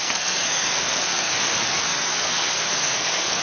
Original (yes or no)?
no